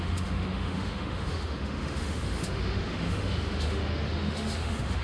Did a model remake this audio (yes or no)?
yes